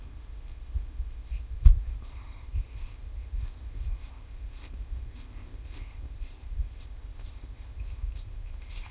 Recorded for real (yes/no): no